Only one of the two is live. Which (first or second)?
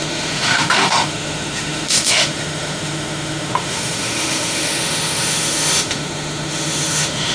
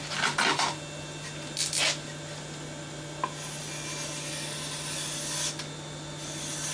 second